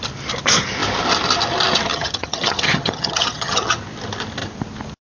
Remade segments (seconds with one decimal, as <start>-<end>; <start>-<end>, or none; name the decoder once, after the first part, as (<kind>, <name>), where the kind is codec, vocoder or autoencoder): 1.9-3.8 (vocoder, HiFi-GAN)